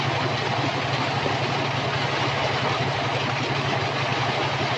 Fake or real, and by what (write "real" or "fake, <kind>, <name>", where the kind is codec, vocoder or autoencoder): real